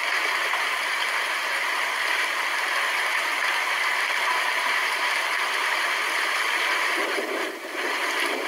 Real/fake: real